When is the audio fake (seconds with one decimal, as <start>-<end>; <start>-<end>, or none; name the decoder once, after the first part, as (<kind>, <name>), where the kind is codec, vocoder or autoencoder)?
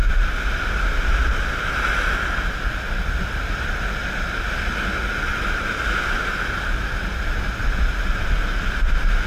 none